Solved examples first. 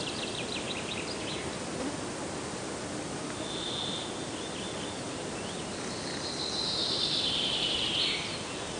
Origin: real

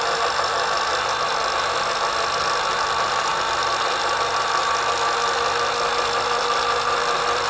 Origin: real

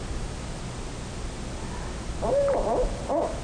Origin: real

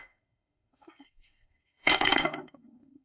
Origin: fake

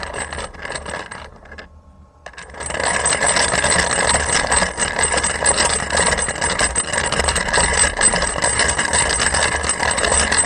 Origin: real